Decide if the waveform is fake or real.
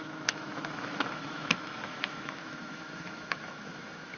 fake